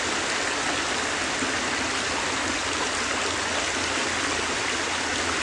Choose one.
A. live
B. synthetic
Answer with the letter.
A